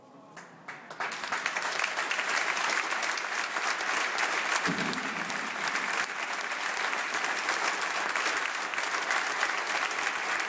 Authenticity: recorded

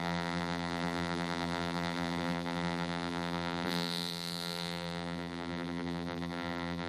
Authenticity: remade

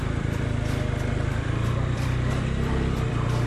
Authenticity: remade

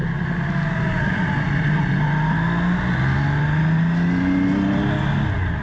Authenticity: recorded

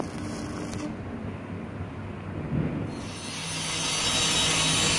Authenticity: recorded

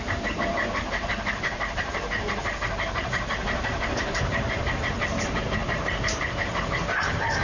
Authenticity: remade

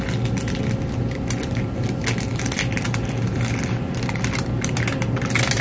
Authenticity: recorded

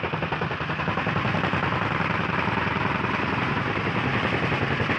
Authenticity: remade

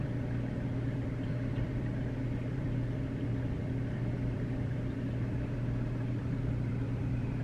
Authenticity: remade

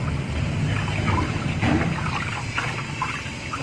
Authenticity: recorded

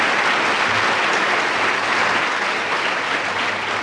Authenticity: recorded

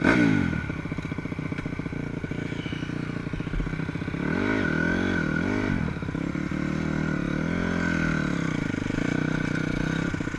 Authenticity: recorded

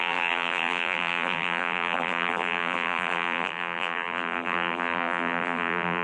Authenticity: remade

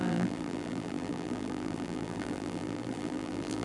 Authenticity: remade